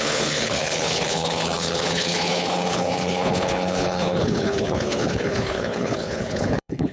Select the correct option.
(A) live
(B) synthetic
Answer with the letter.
B